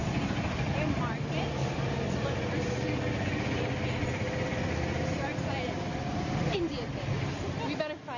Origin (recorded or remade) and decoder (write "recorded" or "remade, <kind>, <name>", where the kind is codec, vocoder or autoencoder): recorded